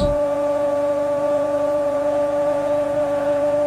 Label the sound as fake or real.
fake